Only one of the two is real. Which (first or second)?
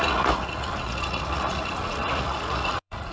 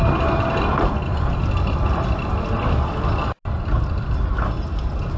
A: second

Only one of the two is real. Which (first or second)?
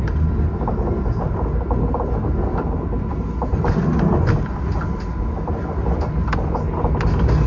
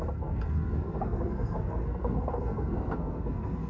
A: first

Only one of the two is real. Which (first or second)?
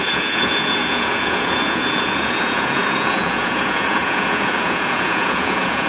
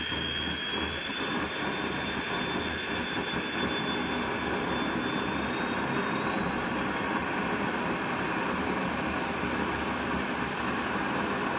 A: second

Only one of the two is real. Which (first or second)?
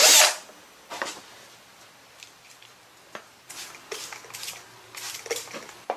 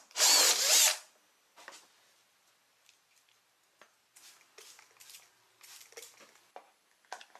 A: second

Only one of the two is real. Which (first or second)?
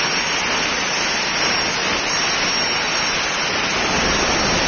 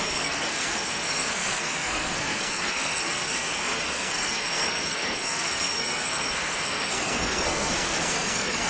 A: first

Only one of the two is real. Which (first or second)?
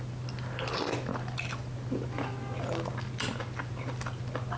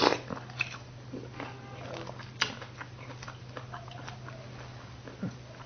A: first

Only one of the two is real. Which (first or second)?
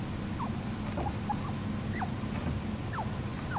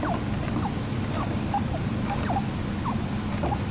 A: first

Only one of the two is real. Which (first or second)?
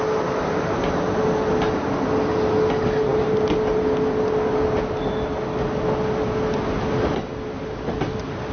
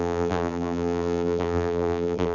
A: first